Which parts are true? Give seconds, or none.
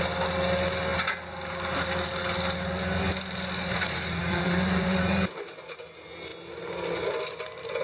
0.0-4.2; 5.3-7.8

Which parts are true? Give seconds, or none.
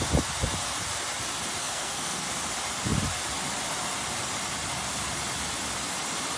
0.0-1.6; 2.2-6.4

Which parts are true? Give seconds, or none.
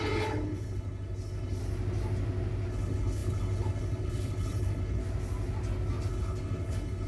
1.6-2.7; 5.0-6.1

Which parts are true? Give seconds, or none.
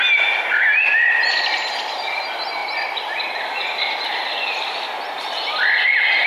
0.0-2.6; 3.3-6.3